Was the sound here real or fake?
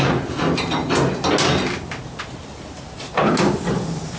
real